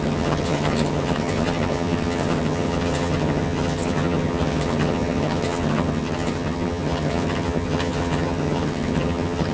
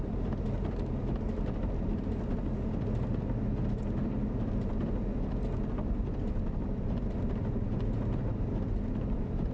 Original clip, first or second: second